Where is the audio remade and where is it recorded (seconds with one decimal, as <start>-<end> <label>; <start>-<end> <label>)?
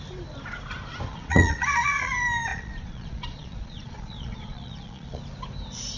0.0-1.1 recorded; 1.1-2.1 remade; 2.1-2.5 recorded; 2.5-5.2 remade; 5.2-6.0 recorded